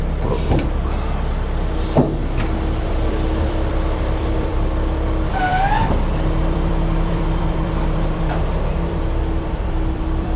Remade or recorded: remade